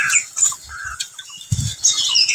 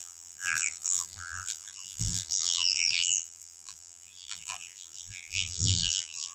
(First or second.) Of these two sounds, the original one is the first